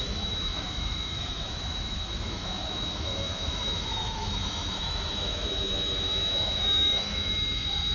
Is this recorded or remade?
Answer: remade